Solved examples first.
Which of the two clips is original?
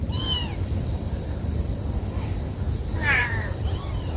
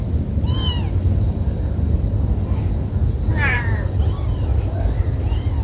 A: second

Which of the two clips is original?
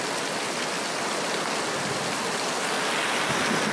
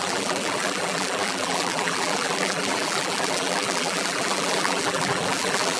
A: first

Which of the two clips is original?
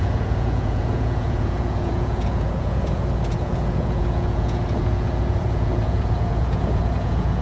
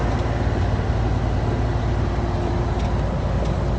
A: second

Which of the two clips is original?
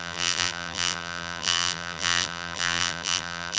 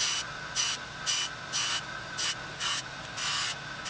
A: second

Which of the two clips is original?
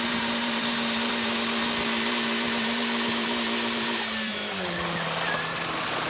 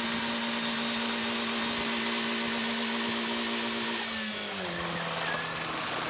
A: second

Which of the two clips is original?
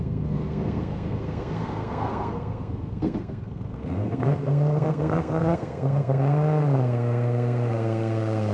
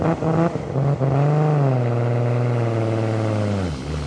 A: second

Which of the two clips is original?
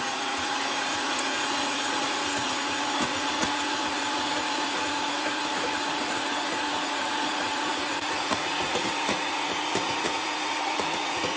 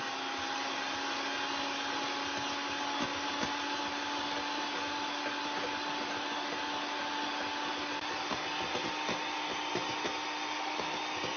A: second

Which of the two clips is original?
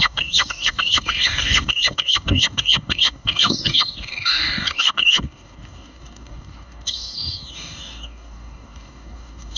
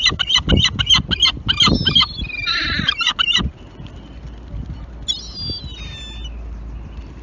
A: second